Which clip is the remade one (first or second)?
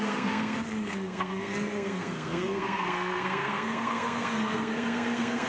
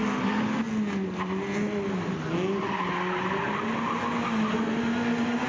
first